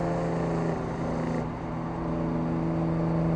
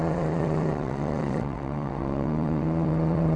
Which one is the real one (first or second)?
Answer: first